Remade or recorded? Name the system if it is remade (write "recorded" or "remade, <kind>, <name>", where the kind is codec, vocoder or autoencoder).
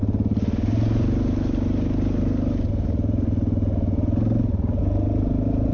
recorded